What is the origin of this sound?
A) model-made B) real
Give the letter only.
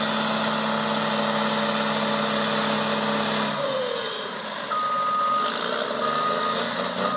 B